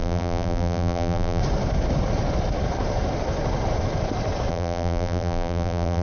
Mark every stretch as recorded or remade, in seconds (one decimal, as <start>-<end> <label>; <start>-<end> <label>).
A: 0.0-1.4 remade; 1.4-4.5 recorded; 4.5-6.0 remade

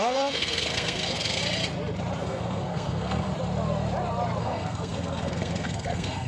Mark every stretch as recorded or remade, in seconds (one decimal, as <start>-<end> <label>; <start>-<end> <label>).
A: 0.0-1.4 remade; 1.4-2.2 recorded; 2.2-3.3 remade; 3.3-4.4 recorded; 4.4-6.3 remade

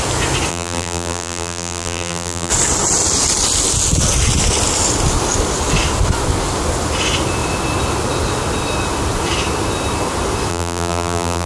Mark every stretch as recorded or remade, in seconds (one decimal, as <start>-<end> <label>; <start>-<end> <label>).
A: 0.0-0.5 recorded; 0.5-2.5 remade; 2.5-10.5 recorded; 10.5-11.5 remade

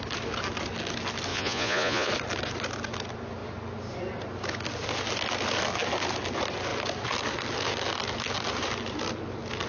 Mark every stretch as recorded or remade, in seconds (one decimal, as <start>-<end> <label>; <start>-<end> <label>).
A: 0.0-1.3 recorded; 1.3-2.1 remade; 2.1-9.7 recorded

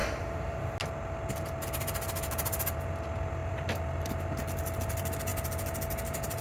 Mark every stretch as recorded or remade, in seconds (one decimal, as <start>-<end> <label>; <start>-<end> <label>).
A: 0.0-0.6 remade; 0.6-3.4 recorded; 3.4-4.1 remade; 4.1-5.3 recorded; 5.3-6.4 remade

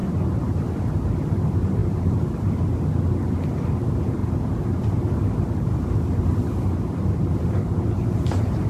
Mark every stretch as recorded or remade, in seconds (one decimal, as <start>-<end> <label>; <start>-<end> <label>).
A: 0.0-8.7 recorded

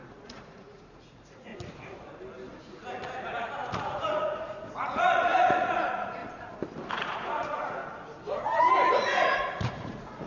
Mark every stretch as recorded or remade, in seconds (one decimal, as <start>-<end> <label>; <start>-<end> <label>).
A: 0.0-1.5 remade; 1.5-3.7 recorded; 3.7-6.2 remade; 6.2-6.9 recorded; 6.9-7.8 remade; 7.8-8.9 recorded; 8.9-10.3 remade